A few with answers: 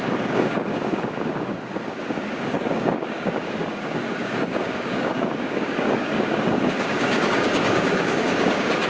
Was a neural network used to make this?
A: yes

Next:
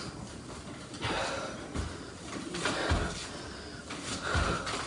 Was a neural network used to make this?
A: no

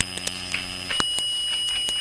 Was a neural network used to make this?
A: no